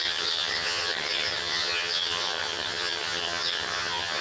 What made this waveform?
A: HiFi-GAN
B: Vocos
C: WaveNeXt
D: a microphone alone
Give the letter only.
A